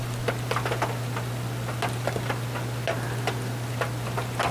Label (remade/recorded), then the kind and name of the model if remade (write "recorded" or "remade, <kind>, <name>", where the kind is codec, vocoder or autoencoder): recorded